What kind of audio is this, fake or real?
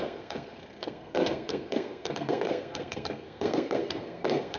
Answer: fake